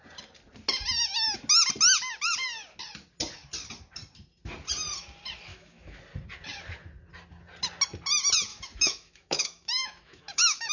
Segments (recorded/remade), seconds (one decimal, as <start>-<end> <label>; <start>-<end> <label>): 0.0-5.5 recorded; 5.5-6.0 remade; 6.0-8.5 recorded; 8.5-10.7 remade

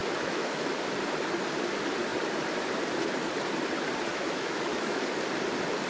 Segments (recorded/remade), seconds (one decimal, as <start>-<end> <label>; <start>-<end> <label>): 0.0-0.7 remade; 0.7-4.1 recorded; 4.1-5.0 remade; 5.0-5.9 recorded

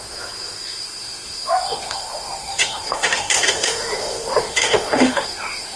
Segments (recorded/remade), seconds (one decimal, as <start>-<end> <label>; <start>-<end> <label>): 0.0-5.8 remade